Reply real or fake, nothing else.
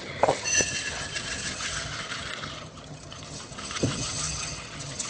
fake